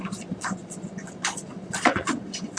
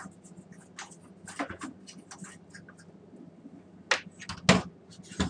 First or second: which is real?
second